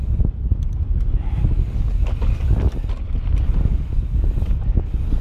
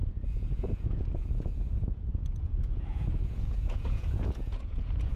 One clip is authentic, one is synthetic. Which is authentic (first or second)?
first